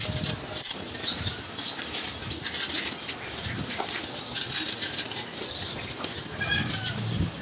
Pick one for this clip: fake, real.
real